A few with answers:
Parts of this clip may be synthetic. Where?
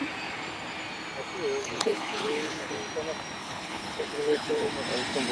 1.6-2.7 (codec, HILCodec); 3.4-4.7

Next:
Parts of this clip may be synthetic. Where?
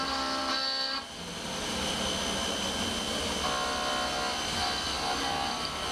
none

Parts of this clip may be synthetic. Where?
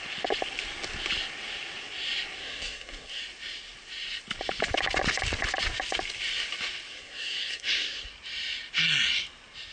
2.4-3.2 (codec, SNAC); 6.9-8.1